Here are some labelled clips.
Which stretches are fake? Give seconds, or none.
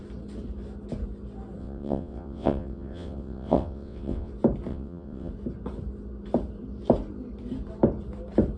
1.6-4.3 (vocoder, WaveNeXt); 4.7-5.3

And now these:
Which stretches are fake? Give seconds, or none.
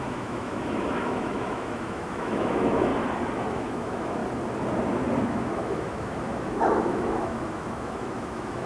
0.0-2.9 (autoencoder, DAC-VAE); 3.5-4.2; 5.2-8.7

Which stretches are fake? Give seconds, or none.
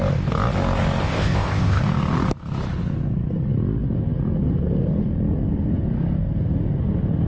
1.0-1.8 (codec, ZipCodec)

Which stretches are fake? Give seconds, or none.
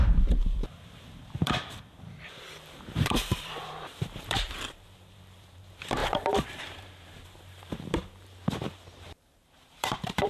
0.0-10.3 (vocoder, BigVGAN v2)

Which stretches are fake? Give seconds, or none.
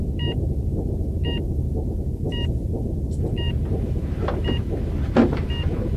none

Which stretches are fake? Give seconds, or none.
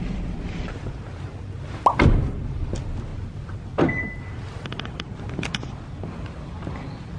none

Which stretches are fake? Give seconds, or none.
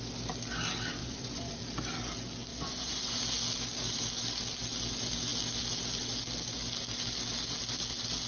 1.0-1.6 (vocoder, Vocos); 2.5-3.2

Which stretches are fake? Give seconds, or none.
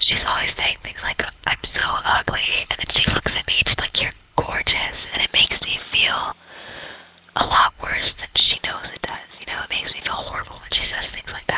0.0-5.1 (codec, HILCodec); 7.4-8.4; 10.2-11.6